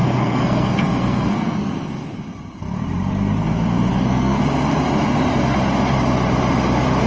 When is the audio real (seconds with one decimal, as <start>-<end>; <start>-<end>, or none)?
2.2-3.9; 4.4-7.1